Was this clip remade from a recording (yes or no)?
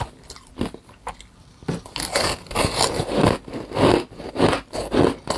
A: no